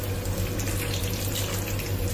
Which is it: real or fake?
real